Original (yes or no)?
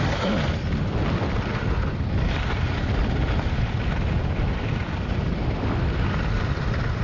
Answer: yes